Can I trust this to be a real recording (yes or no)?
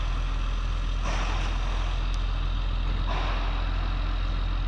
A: yes